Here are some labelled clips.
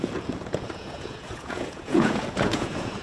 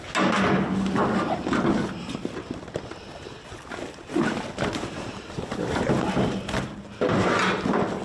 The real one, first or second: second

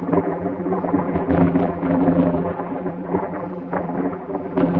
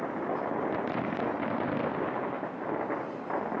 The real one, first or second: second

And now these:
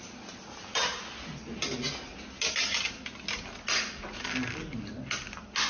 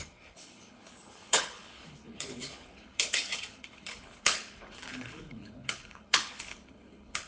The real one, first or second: first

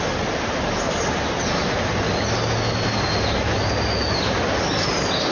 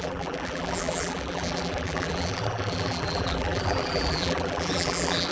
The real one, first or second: first